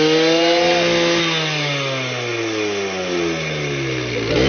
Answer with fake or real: real